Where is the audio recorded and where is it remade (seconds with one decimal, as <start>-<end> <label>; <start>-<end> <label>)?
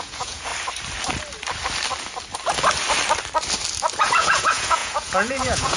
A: 0.0-0.5 remade; 0.5-4.0 recorded; 4.0-5.8 remade